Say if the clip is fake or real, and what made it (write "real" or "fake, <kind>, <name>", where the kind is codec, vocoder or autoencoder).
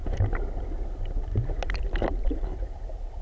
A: real